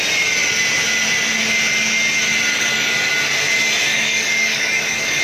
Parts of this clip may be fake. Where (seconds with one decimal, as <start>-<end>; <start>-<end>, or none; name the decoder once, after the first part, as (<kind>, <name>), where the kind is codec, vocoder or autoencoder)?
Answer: 2.5-3.1 (codec, DAC); 3.9-5.2